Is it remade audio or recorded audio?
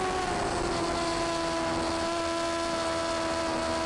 recorded